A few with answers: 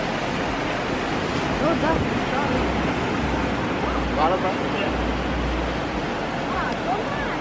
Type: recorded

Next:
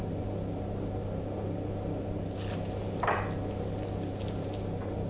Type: recorded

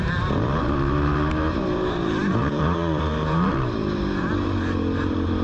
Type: remade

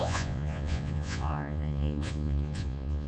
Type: remade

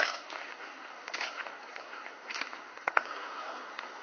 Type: remade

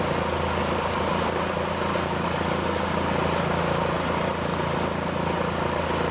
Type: recorded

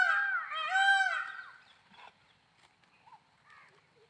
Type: recorded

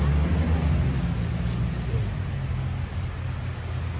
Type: recorded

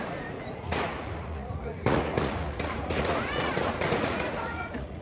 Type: remade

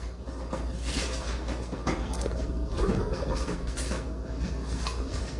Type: remade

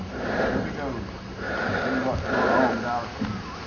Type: recorded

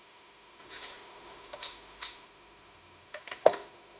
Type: remade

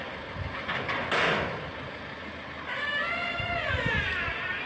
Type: recorded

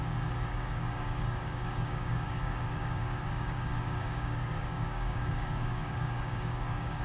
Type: remade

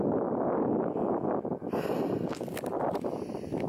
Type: recorded